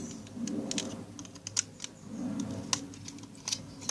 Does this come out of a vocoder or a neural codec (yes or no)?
no